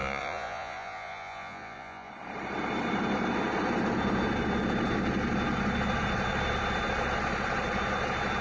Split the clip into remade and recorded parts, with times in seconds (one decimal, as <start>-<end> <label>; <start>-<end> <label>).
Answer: 0.0-2.1 remade; 2.1-8.4 recorded